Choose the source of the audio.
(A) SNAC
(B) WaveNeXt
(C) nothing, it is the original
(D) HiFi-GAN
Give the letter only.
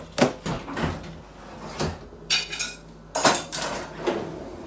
C